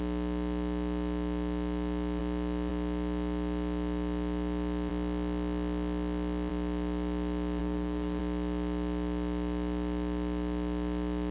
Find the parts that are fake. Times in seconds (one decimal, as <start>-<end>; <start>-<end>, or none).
7.6-8.2